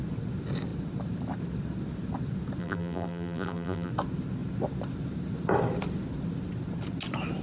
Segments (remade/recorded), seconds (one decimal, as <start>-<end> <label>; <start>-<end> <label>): 0.0-2.6 recorded; 2.6-3.9 remade; 3.9-7.4 recorded